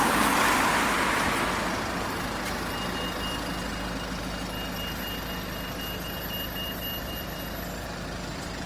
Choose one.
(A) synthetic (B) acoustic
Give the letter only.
B